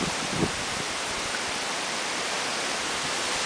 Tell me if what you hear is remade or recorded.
recorded